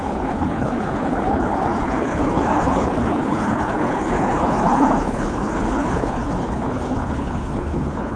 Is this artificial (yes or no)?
yes